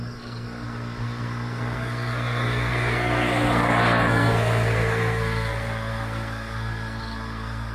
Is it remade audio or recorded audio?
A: remade